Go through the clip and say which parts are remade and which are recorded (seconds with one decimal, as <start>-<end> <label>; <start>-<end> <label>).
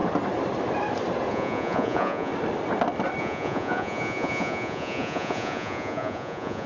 0.0-1.3 recorded; 1.3-2.3 remade; 2.3-3.2 recorded; 3.2-6.7 remade